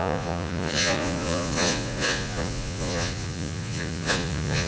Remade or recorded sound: remade